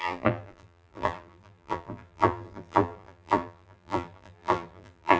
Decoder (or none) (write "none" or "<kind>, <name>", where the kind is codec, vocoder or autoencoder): vocoder, BigVGAN v2